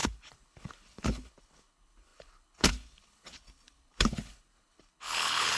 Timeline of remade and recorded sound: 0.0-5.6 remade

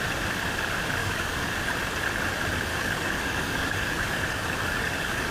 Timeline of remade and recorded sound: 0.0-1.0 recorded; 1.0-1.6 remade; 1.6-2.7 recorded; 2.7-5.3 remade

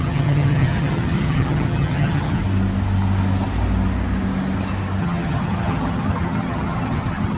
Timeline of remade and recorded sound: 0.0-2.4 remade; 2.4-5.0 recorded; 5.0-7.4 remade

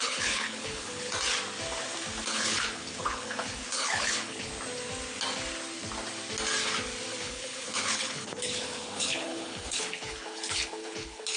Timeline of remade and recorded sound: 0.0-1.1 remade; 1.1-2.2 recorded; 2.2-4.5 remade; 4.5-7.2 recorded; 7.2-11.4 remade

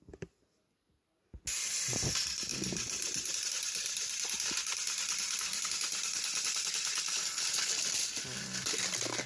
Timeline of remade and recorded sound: 0.0-9.3 recorded

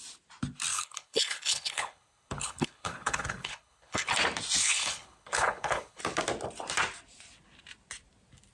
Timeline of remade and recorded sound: 0.0-0.7 recorded; 0.7-4.1 remade; 4.1-4.6 recorded; 4.6-6.0 remade; 6.0-8.5 recorded

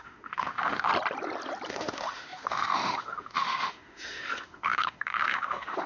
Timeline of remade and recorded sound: 0.0-0.9 remade; 0.9-1.7 recorded; 1.7-5.9 remade

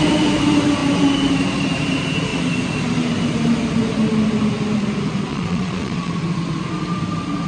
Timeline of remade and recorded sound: 0.0-5.3 recorded; 5.3-6.1 remade; 6.1-7.5 recorded